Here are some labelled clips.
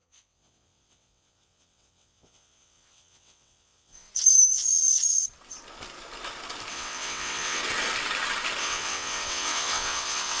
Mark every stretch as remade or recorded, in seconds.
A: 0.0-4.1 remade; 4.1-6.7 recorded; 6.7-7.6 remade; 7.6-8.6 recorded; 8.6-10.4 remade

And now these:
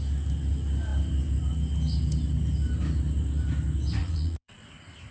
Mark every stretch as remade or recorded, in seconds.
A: 0.0-4.0 recorded; 4.0-4.6 remade; 4.6-5.1 recorded

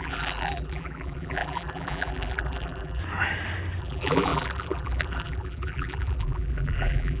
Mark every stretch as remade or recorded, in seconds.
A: 0.0-3.0 remade; 3.0-3.8 recorded; 3.8-7.2 remade

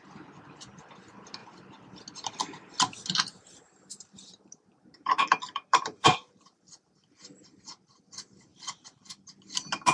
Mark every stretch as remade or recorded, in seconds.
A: 0.0-3.9 recorded; 3.9-8.1 remade; 8.1-8.5 recorded; 8.5-9.1 remade; 9.1-9.9 recorded